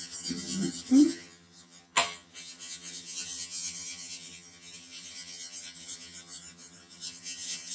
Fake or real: fake